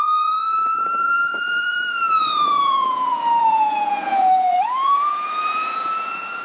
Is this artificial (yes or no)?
yes